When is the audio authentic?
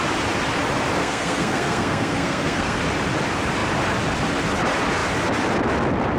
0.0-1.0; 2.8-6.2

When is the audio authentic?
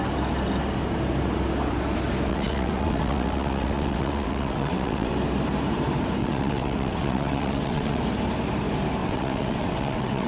0.0-2.3; 5.1-6.2; 8.0-9.0